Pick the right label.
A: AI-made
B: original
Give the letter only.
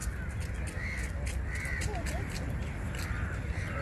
B